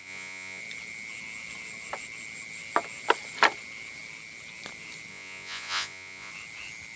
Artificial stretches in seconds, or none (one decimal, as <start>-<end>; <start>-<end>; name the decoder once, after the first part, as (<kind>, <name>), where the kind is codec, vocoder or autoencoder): 0.0-0.6 (vocoder, Vocos); 5.1-6.3